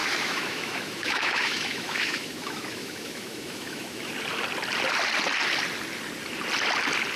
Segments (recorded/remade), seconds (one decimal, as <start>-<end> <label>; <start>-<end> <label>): 0.0-4.1 remade; 4.1-7.2 recorded